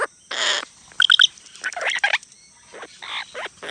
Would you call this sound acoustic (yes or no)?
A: yes